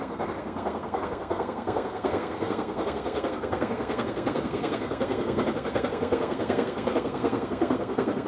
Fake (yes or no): yes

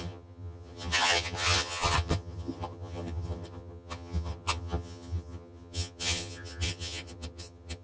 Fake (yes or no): yes